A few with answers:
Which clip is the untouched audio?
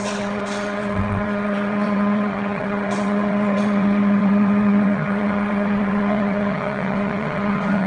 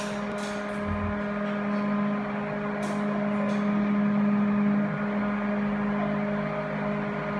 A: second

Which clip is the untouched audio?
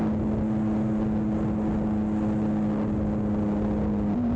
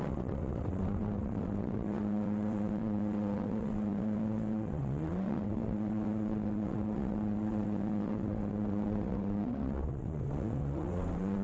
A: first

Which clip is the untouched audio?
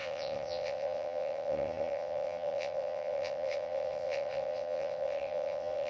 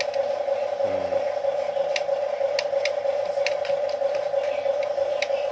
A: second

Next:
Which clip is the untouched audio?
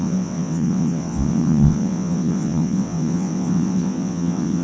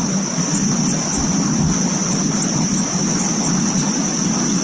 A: second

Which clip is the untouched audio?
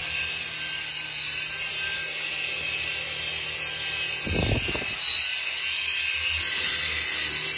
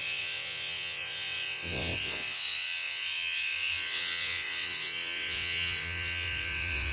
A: first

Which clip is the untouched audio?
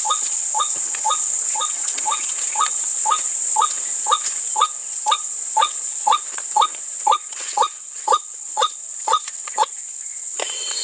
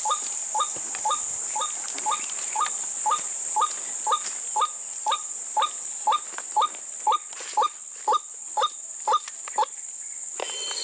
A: second